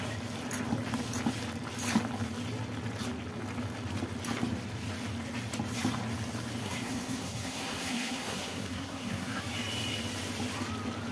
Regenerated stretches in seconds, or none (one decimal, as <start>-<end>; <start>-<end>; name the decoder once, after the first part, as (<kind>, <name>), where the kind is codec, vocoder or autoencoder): 6.6-9.4 (codec, SNAC)